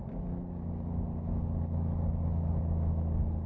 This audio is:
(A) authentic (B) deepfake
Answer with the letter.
A